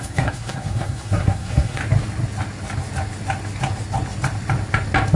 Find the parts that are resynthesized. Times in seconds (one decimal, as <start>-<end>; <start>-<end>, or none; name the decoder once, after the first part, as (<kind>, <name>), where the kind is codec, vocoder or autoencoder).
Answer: 0.0-1.8 (codec, SNAC)